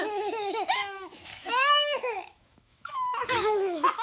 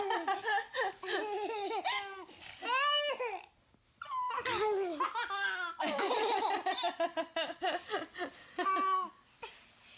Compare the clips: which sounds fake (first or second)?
first